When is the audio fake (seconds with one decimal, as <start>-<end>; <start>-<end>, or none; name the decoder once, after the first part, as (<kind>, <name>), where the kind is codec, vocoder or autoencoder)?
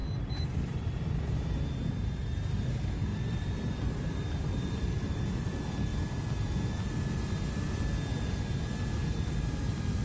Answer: 1.9-5.9 (vocoder, BigVGAN v2); 9.0-10.0